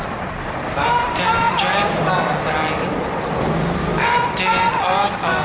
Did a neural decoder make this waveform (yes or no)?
no